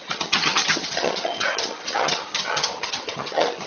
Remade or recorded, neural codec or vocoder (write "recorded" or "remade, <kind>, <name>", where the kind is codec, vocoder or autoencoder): remade, vocoder, HiFi-GAN